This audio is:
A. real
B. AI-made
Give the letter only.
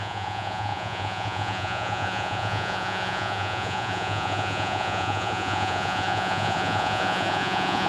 B